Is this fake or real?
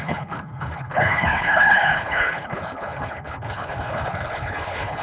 fake